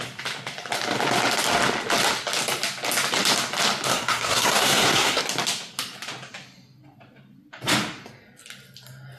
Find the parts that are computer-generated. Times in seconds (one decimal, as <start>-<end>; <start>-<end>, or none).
3.9-5.2